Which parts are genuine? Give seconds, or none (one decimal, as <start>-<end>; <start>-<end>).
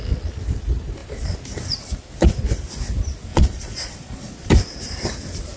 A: 0.0-3.3; 4.5-5.6